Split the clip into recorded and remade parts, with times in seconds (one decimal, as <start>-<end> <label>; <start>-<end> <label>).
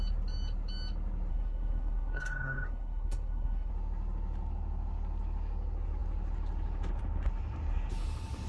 0.0-1.3 recorded; 1.3-3.7 remade; 3.7-8.5 recorded